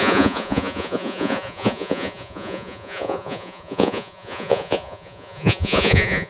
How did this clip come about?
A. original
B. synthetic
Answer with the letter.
B